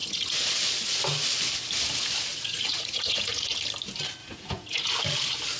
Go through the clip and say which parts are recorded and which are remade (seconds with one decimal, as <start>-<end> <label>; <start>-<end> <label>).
0.0-0.5 remade; 0.5-2.3 recorded; 2.3-3.6 remade; 3.6-4.2 recorded; 4.2-4.9 remade; 4.9-5.6 recorded